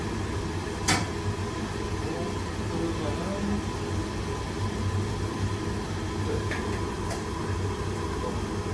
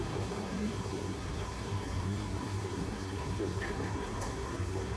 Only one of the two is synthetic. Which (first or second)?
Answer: second